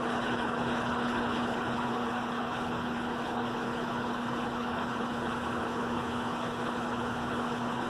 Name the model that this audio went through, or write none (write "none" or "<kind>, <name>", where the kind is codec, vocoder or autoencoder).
codec, HILCodec